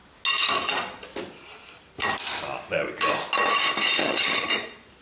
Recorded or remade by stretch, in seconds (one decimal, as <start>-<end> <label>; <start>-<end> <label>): 0.0-4.0 recorded; 4.0-4.5 remade; 4.5-5.0 recorded